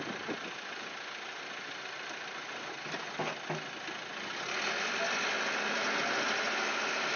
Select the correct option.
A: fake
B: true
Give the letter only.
B